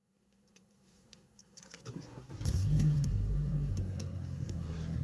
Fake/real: fake